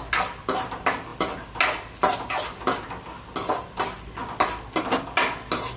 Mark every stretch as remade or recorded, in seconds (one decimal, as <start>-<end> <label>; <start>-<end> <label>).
0.0-5.8 recorded